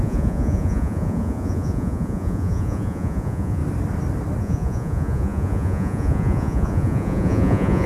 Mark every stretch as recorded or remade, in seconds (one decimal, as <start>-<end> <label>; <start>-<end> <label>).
0.0-3.6 remade; 3.6-4.4 recorded; 4.4-7.9 remade